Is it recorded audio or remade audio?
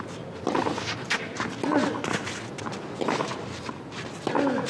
recorded